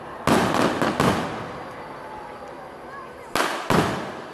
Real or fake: real